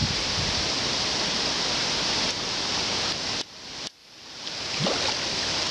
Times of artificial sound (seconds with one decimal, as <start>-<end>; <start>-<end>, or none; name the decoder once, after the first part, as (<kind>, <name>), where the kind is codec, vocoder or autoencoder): 0.0-3.4 (vocoder, BigVGAN v2); 4.0-4.8